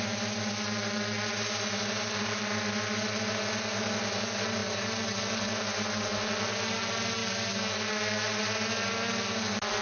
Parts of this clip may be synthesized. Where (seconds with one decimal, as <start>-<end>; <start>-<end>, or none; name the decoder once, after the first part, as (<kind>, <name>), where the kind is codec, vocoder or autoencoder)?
none